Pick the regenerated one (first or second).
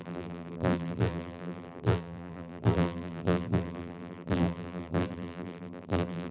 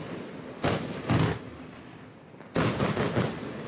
first